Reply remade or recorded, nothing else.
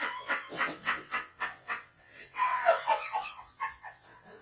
remade